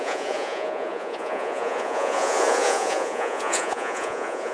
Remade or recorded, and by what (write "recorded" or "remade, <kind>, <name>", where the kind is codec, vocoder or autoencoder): remade, vocoder, Vocos